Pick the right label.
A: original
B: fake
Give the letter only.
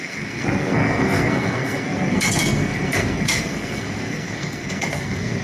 B